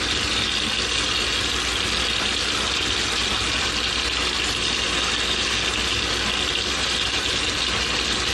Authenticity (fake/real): real